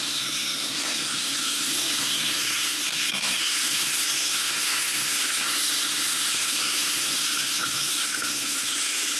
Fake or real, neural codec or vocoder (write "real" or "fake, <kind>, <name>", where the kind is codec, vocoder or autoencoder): fake, codec, SNAC